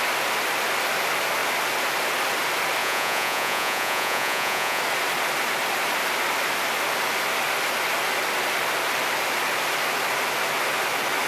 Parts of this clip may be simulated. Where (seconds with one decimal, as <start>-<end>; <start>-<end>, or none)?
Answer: 2.8-4.8